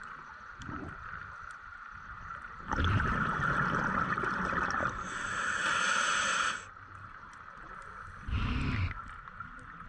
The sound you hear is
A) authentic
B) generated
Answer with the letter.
A